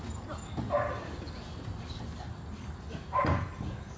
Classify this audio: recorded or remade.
recorded